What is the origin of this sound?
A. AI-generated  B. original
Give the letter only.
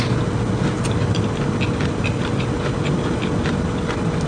B